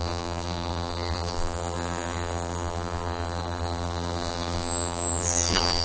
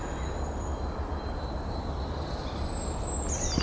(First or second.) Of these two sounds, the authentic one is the second